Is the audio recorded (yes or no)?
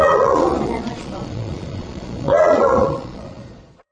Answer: no